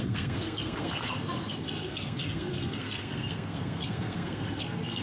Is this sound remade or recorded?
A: remade